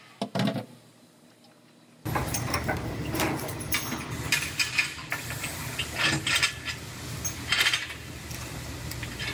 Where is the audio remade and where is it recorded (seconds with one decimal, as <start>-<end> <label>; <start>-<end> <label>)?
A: 0.0-2.2 recorded; 2.2-3.8 remade; 3.8-9.3 recorded